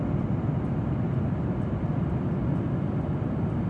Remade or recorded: recorded